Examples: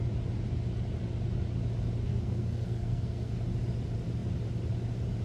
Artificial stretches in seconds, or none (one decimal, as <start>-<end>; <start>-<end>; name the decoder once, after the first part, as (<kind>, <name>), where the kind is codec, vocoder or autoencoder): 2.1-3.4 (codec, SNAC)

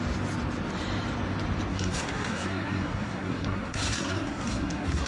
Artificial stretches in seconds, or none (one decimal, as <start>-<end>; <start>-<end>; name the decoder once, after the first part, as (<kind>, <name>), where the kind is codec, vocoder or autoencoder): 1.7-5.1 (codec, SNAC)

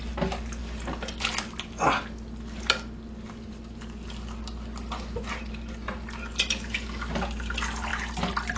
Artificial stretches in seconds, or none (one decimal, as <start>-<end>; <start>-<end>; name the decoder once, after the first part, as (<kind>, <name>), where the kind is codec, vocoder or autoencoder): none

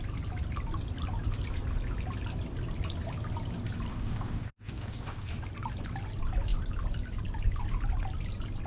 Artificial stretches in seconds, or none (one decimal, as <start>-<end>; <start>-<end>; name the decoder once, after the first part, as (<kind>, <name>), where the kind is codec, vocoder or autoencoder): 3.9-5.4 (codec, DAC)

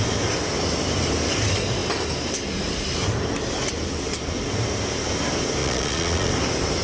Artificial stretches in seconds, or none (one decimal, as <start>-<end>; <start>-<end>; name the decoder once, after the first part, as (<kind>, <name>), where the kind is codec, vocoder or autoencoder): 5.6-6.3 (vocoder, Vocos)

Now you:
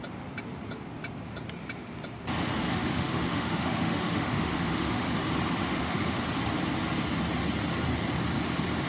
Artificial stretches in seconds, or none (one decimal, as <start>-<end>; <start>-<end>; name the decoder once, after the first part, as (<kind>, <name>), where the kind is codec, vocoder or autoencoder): 2.7-5.1 (autoencoder, DAC-VAE); 5.6-6.2